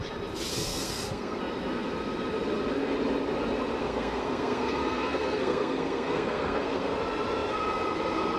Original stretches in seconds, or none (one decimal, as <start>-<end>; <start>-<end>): 0.0-0.5; 1.4-3.8; 6.9-8.4